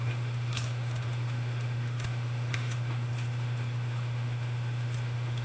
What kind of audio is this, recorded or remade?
remade